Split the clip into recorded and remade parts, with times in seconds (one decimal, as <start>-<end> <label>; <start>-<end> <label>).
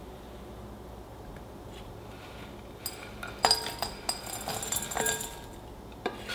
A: 0.0-6.3 recorded